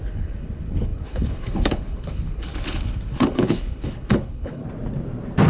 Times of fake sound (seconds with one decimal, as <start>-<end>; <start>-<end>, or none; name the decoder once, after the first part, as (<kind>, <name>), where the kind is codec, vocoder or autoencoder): 0.0-4.6 (codec, HILCodec)